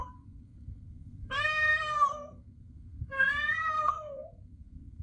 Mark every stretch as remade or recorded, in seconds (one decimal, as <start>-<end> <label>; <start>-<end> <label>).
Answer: 0.0-5.0 remade